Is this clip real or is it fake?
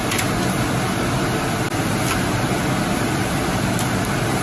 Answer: real